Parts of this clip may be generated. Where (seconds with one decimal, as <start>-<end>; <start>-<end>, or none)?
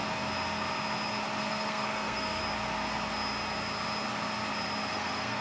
1.4-2.4; 4.9-5.4